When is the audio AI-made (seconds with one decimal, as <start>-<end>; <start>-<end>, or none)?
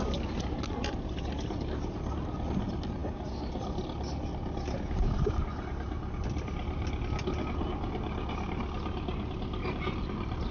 none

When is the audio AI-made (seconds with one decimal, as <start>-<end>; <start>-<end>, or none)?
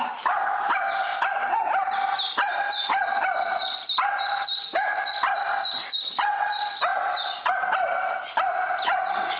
none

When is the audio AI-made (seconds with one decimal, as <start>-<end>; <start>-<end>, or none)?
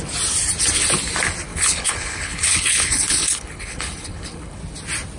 1.5-4.6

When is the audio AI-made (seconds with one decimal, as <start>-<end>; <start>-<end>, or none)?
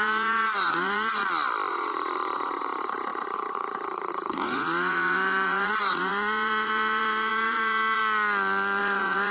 0.0-1.2; 1.7-8.0; 8.8-9.3